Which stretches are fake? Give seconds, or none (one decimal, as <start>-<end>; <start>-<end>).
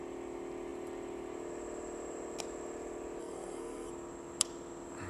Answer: 3.2-3.9